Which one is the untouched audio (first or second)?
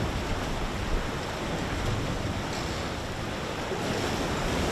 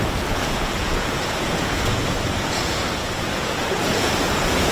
first